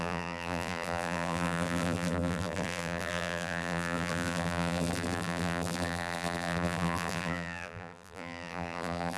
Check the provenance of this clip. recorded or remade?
remade